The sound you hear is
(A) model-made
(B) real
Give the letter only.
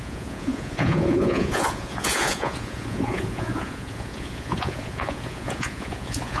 A